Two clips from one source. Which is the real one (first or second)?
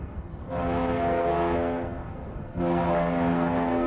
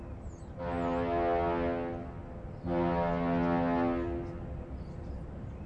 second